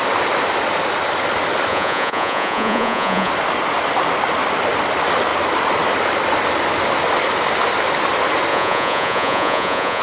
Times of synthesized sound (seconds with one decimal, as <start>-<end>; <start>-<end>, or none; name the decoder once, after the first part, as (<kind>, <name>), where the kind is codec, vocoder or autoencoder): 1.7-3.3 (vocoder, Vocos); 8.5-10.0